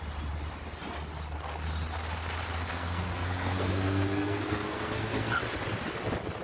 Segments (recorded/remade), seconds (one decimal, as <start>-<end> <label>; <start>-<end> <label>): 0.0-2.7 recorded; 2.7-5.4 remade; 5.4-6.4 recorded